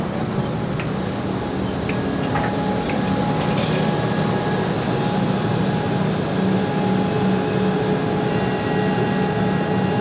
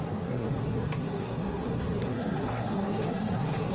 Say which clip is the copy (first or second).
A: second